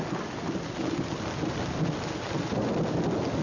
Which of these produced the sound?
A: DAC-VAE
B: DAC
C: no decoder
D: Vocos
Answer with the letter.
C